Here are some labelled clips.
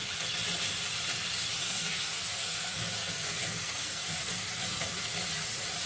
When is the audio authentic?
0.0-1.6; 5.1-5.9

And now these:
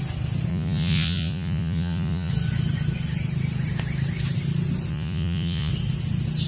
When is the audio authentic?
0.0-0.5; 2.3-4.9; 5.7-6.5